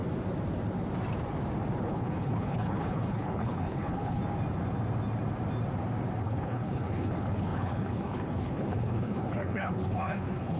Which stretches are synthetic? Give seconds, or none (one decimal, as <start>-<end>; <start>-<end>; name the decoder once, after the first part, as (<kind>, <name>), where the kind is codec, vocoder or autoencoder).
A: 1.8-4.2 (codec, HILCodec); 6.2-10.6